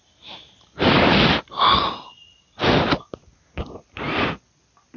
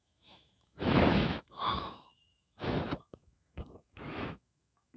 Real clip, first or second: first